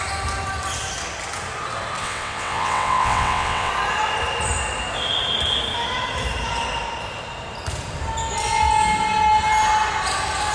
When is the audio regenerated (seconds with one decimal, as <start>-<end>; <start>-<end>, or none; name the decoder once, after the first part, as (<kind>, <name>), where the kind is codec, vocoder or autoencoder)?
2.0-3.7 (vocoder, WaveNeXt)